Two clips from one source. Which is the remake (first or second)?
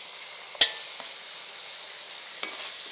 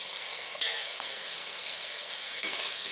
second